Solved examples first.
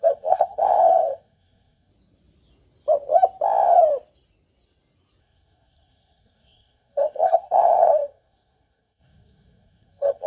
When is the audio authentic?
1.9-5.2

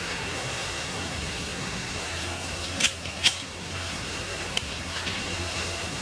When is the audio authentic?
none

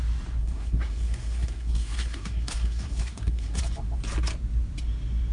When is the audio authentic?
0.0-0.4; 3.6-5.3